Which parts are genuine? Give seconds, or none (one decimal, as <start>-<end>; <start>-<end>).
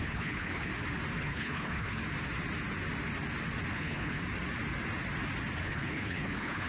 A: 0.7-1.2; 2.0-3.7; 4.2-5.6